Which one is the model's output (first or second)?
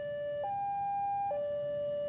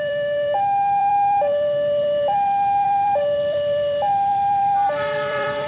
second